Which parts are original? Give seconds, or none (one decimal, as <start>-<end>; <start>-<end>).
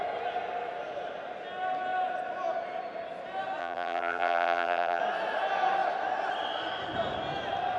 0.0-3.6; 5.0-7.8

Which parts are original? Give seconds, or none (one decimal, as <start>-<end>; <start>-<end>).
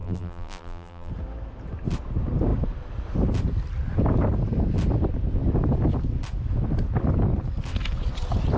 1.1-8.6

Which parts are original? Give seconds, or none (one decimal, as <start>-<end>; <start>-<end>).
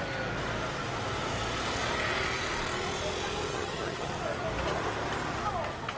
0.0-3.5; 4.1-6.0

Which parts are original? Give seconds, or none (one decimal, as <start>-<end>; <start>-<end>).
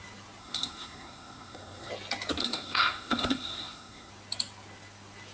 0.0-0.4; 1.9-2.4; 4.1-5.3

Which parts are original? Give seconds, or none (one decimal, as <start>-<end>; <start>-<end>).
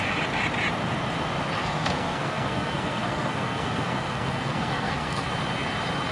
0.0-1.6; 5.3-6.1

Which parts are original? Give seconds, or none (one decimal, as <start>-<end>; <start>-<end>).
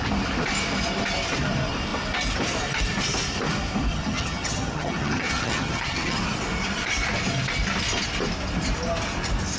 0.0-3.9; 6.2-9.6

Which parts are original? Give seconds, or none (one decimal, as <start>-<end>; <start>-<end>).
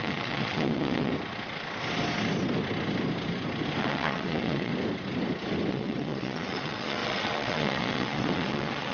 1.1-3.8; 4.7-5.7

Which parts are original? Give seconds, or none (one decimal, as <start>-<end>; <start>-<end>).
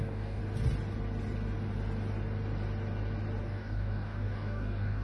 0.4-3.4